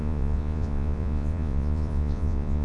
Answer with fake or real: fake